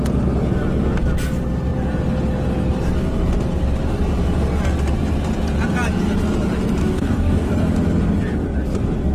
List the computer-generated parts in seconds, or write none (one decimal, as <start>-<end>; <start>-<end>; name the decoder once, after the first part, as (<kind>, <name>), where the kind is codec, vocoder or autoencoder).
6.8-7.5 (codec, DAC)